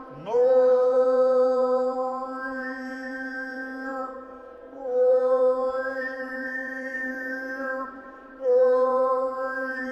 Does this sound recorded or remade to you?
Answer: remade